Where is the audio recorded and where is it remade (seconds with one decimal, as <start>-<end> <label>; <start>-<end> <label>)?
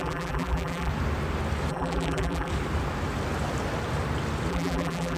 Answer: 0.0-0.9 remade; 0.9-1.7 recorded; 1.7-2.5 remade; 2.5-4.5 recorded; 4.5-5.2 remade